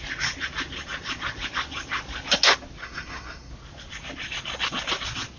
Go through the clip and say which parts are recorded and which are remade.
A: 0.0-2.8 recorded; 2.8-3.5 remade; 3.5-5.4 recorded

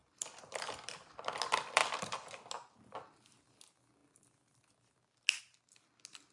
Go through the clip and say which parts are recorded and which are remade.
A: 0.0-6.3 recorded

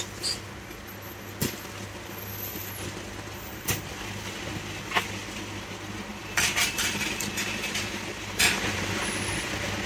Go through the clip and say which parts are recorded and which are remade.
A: 0.0-2.6 recorded; 2.6-3.7 remade; 3.7-6.1 recorded; 6.1-9.0 remade; 9.0-9.9 recorded

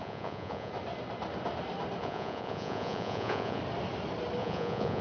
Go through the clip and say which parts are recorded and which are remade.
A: 0.0-0.7 remade; 0.7-2.0 recorded; 2.0-3.6 remade; 3.6-4.4 recorded; 4.4-5.0 remade

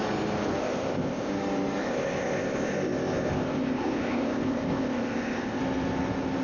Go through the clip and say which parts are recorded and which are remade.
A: 0.0-0.6 recorded; 0.6-1.3 remade; 1.3-1.8 recorded; 1.8-5.6 remade; 5.6-6.4 recorded

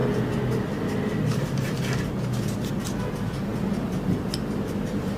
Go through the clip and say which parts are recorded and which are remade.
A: 0.0-5.2 recorded

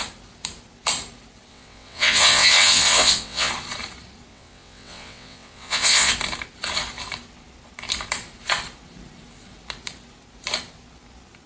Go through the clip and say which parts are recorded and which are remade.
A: 0.0-1.5 recorded; 1.5-3.5 remade; 3.5-4.3 recorded; 4.3-6.1 remade; 6.1-11.5 recorded